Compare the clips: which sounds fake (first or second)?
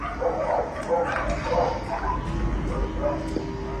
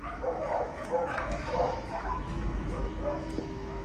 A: second